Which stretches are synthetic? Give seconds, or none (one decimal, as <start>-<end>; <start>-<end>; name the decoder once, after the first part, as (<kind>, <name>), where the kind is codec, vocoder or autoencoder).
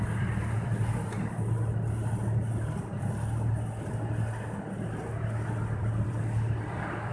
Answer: 0.0-7.1 (vocoder, BigVGAN v2)